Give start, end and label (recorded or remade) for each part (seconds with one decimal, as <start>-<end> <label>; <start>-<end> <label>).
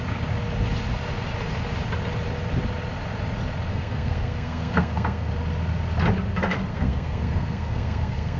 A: 0.0-3.7 recorded; 3.7-5.3 remade; 5.3-6.7 recorded; 6.7-8.4 remade